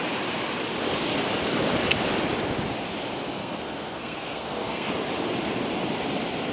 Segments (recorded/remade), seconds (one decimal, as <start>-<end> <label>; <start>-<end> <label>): 0.0-3.4 recorded; 3.4-4.9 remade; 4.9-6.5 recorded